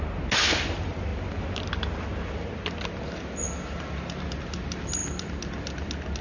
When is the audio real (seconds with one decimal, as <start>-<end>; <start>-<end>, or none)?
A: 0.0-6.2

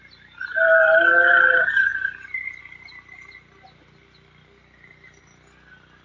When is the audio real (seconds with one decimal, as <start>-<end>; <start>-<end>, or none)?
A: 0.0-6.0

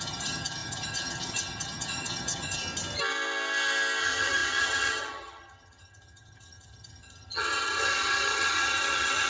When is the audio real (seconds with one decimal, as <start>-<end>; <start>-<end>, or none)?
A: 2.6-4.0

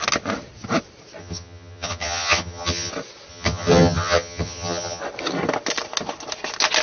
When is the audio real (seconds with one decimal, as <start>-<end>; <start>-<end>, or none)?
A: 0.0-1.2; 2.9-3.3; 5.0-6.8

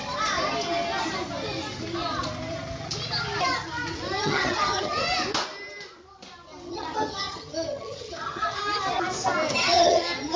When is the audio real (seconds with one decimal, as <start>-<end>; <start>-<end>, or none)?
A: 0.0-4.2; 4.9-6.7; 8.6-9.6

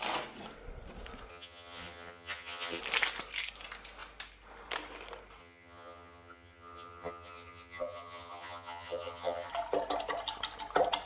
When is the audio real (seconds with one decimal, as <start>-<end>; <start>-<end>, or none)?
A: 0.0-1.3; 2.8-5.4; 9.5-11.1

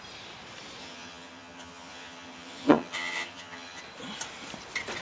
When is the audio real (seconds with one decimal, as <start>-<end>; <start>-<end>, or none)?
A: 0.0-0.8; 3.8-5.0

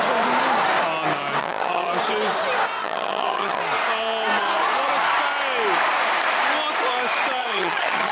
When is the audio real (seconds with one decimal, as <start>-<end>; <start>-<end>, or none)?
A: 0.0-1.4; 1.9-2.8; 3.6-7.4